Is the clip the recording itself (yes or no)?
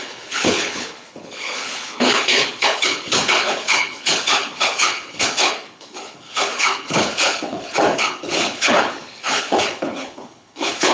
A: no